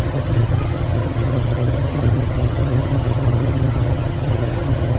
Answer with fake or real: fake